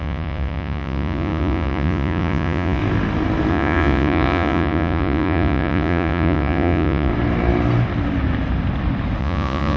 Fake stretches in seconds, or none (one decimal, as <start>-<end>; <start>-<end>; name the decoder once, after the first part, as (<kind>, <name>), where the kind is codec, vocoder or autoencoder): 0.0-2.8 (vocoder, Vocos); 3.5-7.1; 9.2-9.8